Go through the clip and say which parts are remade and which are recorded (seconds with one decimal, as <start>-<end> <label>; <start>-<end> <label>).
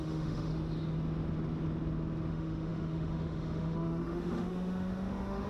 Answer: 0.0-0.5 remade; 0.5-2.3 recorded; 2.3-5.5 remade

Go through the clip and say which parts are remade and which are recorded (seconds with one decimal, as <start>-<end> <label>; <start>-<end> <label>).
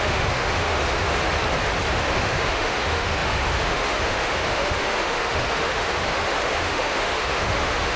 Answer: 0.0-1.2 remade; 1.2-1.9 recorded; 1.9-8.0 remade